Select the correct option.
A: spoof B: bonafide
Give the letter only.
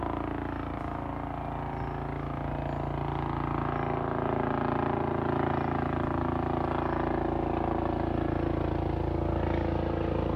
B